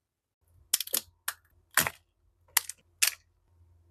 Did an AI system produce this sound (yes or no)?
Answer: no